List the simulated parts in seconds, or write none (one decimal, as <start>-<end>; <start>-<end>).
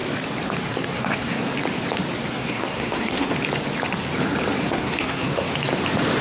0.7-1.5; 2.3-3.3; 4.6-5.5